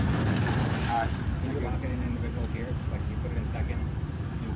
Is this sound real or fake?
fake